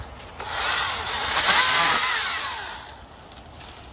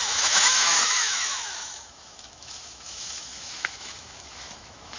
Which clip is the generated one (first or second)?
second